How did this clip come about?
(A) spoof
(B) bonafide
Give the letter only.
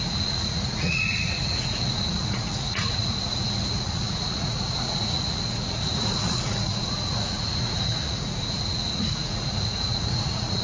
A